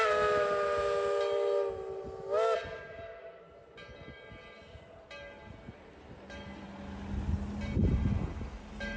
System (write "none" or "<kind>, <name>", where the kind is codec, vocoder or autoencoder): none